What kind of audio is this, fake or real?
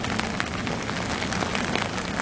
real